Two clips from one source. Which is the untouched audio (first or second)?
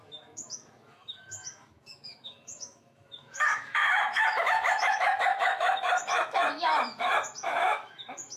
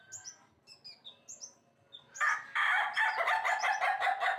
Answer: second